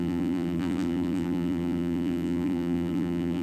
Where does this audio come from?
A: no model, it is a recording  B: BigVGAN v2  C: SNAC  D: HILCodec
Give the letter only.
B